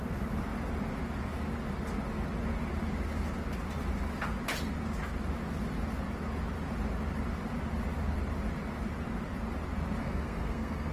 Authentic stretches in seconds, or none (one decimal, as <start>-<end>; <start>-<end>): 0.0-10.0